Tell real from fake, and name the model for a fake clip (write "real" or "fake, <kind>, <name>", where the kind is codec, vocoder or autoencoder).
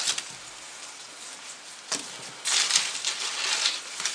real